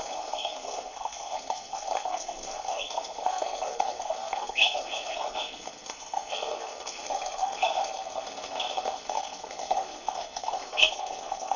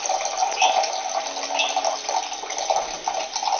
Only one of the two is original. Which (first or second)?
second